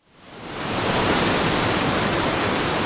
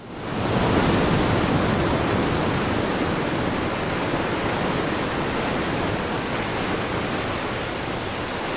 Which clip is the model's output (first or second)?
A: first